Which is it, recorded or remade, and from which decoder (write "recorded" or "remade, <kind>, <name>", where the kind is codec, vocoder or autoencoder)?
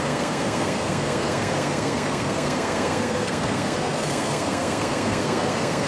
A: remade, codec, SNAC